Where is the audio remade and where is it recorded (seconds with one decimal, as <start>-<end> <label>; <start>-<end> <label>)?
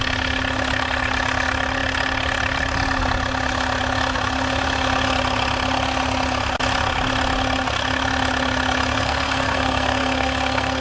0.0-8.9 recorded; 8.9-10.8 remade